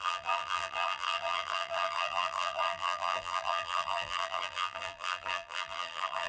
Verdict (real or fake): fake